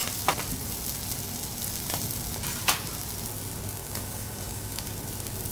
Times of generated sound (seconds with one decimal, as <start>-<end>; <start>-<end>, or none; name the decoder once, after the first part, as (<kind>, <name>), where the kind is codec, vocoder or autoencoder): 3.8-4.9 (codec, DAC)